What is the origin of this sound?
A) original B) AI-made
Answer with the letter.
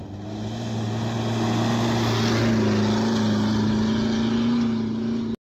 A